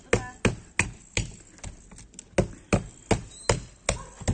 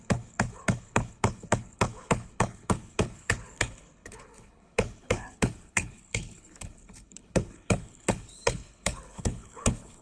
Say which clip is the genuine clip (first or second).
first